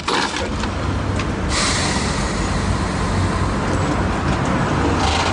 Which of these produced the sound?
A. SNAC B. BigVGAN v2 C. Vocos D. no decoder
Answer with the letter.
D